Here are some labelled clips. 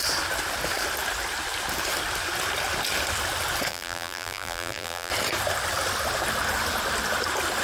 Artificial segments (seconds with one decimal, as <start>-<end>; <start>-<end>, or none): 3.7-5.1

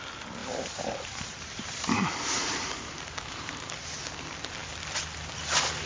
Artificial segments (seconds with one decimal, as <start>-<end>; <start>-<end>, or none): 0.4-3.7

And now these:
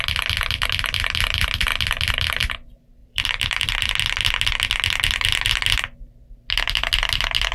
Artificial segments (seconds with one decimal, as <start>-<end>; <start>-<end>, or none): 3.0-3.9